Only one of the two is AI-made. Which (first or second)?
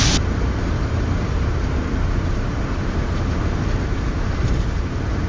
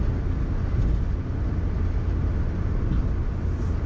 first